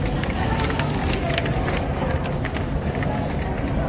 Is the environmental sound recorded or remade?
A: recorded